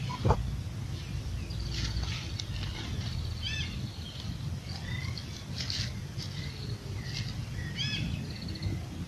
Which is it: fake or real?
real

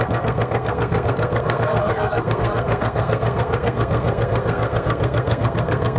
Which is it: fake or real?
fake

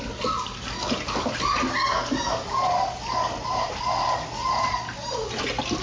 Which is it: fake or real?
real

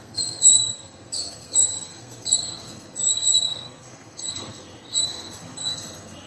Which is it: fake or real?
fake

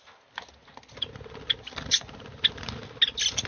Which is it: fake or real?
real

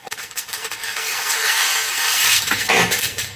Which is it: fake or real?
fake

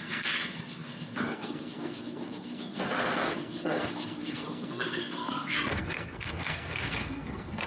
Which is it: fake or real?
fake